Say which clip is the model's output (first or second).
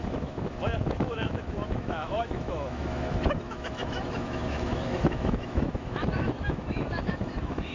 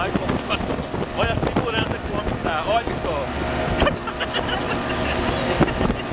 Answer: first